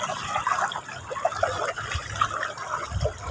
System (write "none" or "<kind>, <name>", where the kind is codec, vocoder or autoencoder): none